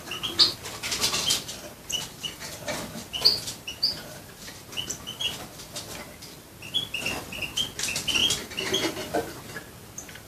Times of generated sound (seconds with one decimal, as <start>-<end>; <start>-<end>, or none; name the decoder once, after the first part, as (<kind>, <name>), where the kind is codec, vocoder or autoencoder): 3.3-4.7 (vocoder, BigVGAN v2)